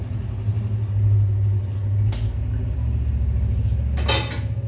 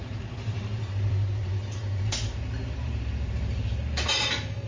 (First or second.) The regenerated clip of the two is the second